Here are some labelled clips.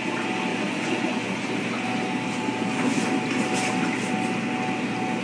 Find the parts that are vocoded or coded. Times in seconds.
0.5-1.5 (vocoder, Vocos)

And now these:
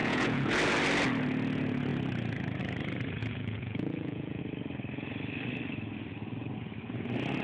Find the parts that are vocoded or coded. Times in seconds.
0.0-0.5 (vocoder, Vocos); 3.2-4.4